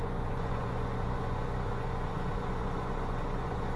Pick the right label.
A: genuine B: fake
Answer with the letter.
B